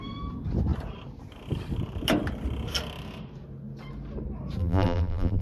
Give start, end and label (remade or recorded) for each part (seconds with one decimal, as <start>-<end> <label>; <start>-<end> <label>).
0.0-4.6 recorded; 4.6-5.4 remade